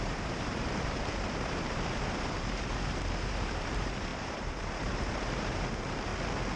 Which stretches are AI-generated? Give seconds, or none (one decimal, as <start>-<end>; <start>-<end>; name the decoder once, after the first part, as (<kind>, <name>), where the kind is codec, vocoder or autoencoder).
0.0-6.1 (vocoder, BigVGAN v2)